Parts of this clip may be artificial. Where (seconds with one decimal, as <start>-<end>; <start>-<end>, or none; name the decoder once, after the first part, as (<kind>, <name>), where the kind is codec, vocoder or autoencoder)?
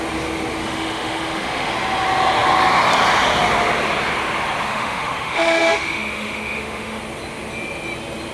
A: 0.6-1.7 (autoencoder, DAC-VAE); 4.7-7.0